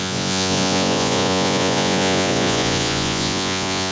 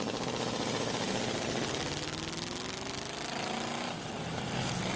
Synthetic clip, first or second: first